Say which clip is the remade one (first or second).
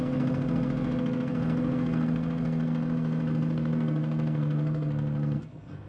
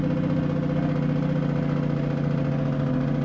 first